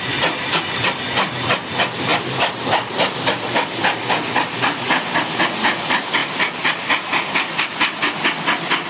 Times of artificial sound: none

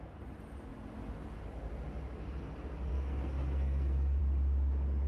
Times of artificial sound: 2.9-4.2 (codec, SNAC)

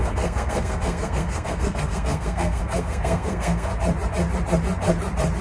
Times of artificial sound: 0.0-3.7 (codec, SNAC)

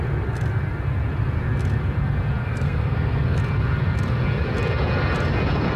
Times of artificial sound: 2.4-3.4 (codec, SNAC)